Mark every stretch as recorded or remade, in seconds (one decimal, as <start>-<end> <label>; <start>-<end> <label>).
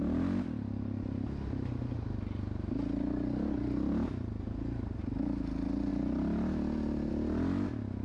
0.0-8.0 recorded